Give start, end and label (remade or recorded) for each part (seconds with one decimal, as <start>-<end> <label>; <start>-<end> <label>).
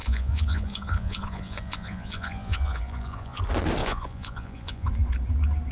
0.0-3.4 remade; 3.4-3.8 recorded; 3.8-4.9 remade; 4.9-5.7 recorded